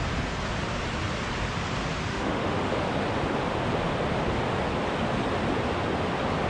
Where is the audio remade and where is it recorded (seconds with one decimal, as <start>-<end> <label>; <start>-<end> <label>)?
0.0-2.1 recorded; 2.1-2.9 remade; 2.9-6.5 recorded